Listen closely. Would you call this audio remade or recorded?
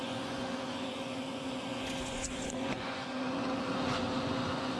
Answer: remade